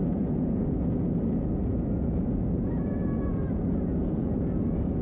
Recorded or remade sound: remade